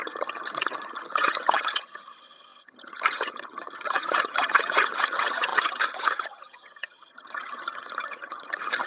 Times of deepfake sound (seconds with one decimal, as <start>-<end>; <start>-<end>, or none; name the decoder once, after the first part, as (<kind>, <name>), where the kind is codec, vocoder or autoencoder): 0.0-8.9 (vocoder, HiFi-GAN)